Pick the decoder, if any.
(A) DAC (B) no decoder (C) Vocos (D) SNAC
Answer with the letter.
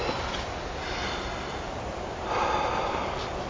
B